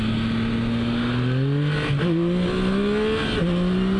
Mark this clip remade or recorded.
recorded